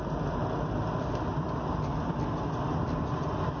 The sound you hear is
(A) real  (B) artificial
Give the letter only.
A